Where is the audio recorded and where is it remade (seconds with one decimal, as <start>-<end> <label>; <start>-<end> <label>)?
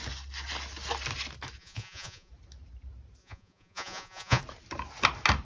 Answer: 0.0-1.6 recorded; 1.6-2.3 remade; 2.3-3.2 recorded; 3.2-4.4 remade; 4.4-5.4 recorded